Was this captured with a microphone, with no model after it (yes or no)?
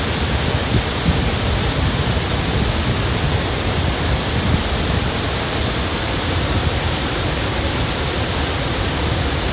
yes